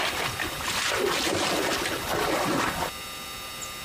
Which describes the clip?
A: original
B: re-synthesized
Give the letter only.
A